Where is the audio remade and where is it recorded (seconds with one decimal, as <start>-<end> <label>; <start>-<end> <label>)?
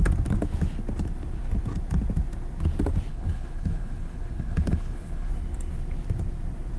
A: 0.0-3.1 recorded; 3.1-5.3 remade; 5.3-6.8 recorded